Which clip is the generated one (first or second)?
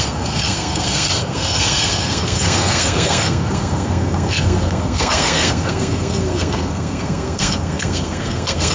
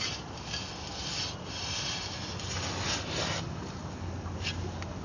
first